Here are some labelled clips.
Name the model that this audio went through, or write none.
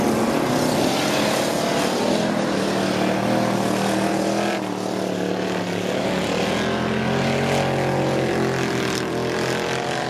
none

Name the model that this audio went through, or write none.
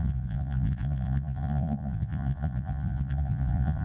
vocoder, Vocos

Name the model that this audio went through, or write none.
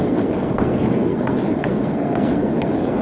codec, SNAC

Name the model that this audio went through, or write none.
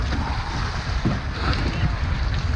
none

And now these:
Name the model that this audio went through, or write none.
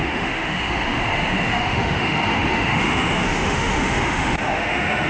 autoencoder, DAC-VAE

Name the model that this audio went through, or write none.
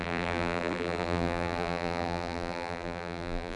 vocoder, BigVGAN v2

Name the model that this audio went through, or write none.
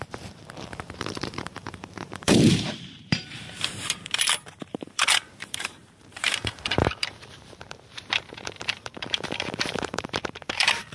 vocoder, BigVGAN v2